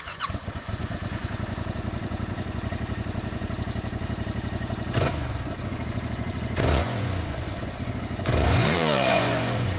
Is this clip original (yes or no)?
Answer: no